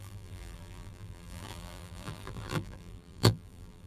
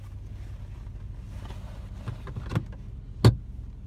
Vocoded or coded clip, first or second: first